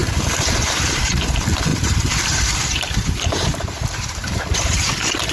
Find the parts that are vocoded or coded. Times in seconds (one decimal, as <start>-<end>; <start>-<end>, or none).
0.0-1.1; 1.7-4.4